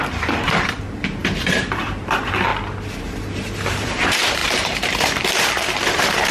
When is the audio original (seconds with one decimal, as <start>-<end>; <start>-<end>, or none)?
2.5-3.0